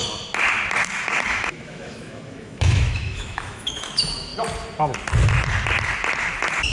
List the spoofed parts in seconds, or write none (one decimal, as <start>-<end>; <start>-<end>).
1.3-4.3